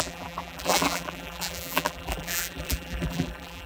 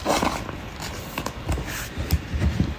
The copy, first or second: first